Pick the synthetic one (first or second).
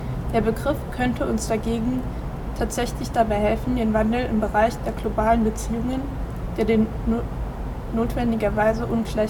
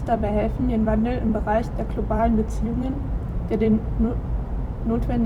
second